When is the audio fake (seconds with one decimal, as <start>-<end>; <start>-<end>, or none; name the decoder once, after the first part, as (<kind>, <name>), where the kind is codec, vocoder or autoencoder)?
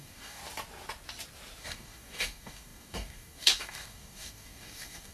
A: 0.0-0.4 (codec, DAC); 1.6-5.1